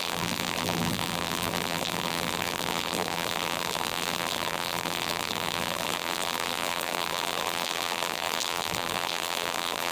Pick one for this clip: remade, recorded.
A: remade